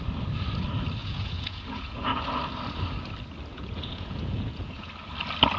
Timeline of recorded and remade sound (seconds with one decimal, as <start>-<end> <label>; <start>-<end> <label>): 0.0-1.0 recorded; 1.0-2.2 remade; 2.2-3.5 recorded; 3.5-4.9 remade; 4.9-5.6 recorded